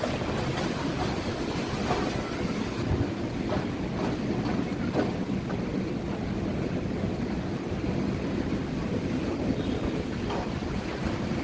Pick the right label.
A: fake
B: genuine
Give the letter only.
B